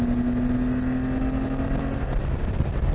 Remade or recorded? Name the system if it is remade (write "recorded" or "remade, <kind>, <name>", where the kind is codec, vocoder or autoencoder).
recorded